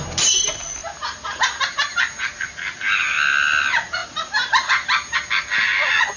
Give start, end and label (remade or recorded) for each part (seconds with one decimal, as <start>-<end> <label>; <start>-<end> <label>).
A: 0.0-6.2 recorded